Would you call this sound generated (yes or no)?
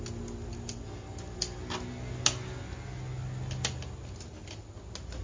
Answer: no